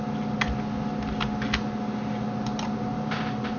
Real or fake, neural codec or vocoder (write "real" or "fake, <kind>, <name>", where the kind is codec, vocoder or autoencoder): real